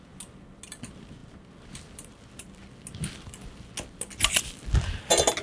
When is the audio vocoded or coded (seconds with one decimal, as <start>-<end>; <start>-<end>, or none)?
none